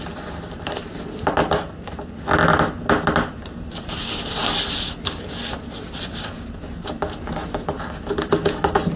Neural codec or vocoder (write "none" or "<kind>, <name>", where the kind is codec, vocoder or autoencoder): none